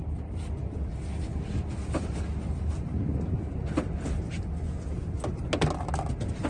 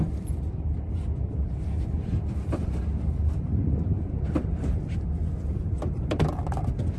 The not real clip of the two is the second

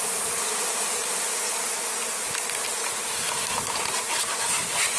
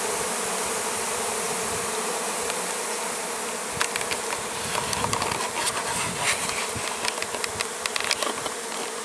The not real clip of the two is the first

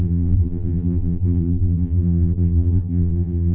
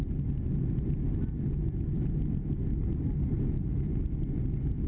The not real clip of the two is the first